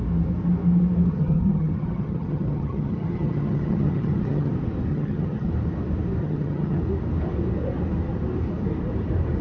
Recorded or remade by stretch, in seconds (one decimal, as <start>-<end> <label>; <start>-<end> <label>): 0.0-1.1 recorded; 1.1-4.5 remade; 4.5-4.9 recorded; 4.9-5.5 remade; 5.5-6.2 recorded; 6.2-6.8 remade; 6.8-9.4 recorded